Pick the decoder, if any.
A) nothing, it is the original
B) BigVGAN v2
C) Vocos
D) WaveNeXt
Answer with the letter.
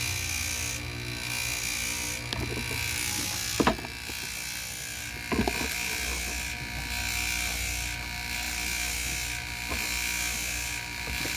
A